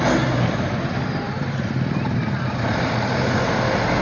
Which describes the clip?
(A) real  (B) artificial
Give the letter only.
A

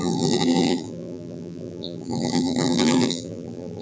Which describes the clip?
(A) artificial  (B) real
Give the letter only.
A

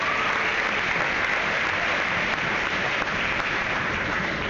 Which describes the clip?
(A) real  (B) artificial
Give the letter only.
A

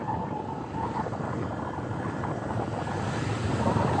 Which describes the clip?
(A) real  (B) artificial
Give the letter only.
A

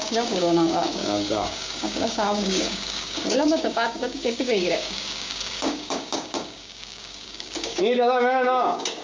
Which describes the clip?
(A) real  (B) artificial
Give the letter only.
B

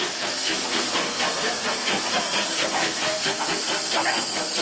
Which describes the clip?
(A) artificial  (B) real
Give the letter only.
A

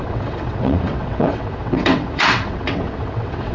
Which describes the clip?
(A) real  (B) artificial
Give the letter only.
B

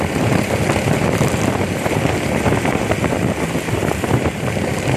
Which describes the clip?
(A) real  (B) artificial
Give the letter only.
B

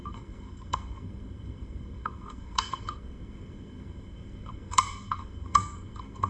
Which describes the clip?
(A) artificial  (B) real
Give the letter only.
A